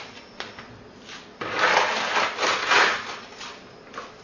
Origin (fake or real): real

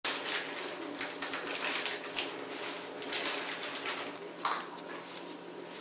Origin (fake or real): real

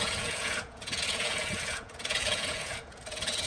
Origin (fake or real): fake